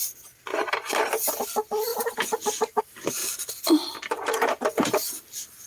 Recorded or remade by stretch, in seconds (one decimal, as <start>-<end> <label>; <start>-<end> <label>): 0.0-0.5 recorded; 0.5-1.3 remade; 1.3-1.9 recorded; 1.9-2.8 remade; 2.8-5.7 recorded